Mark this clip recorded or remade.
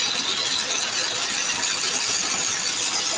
recorded